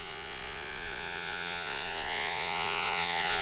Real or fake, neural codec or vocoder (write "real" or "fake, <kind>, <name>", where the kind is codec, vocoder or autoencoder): fake, vocoder, Vocos